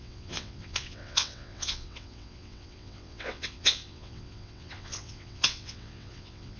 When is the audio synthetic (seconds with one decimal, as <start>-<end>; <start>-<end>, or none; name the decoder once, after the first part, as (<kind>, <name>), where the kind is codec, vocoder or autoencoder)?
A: 0.0-6.6 (vocoder, WaveNeXt)